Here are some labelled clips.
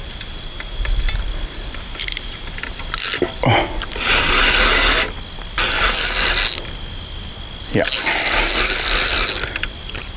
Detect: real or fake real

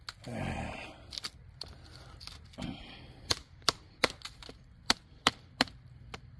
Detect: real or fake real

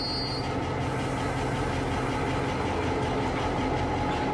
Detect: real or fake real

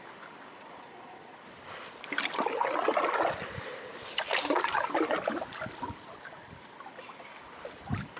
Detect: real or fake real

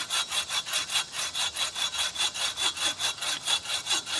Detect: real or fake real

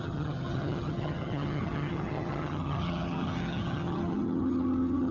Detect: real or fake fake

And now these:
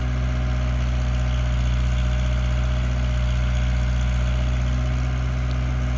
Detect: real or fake real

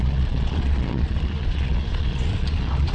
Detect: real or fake fake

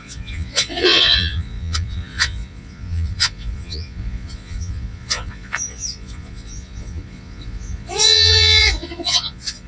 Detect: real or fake fake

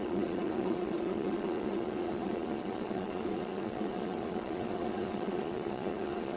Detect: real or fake fake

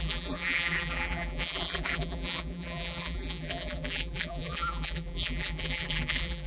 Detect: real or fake fake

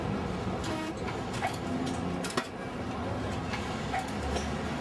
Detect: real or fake real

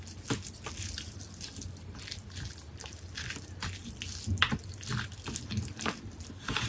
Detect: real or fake real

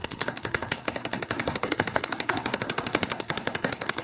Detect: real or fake fake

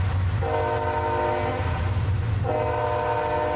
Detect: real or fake real